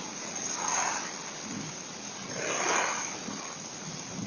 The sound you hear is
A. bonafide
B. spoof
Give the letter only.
A